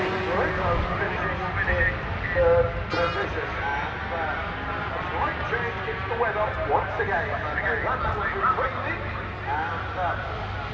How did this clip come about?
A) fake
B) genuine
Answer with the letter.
B